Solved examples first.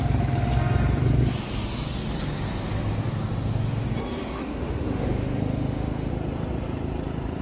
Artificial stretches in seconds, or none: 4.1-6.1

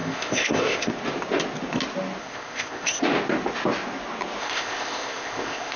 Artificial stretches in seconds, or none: 0.0-0.9; 2.2-3.0; 4.4-5.8